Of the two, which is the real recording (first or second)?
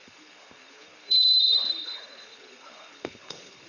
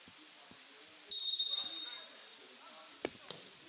second